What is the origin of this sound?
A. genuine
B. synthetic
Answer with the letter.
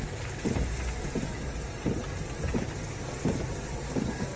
A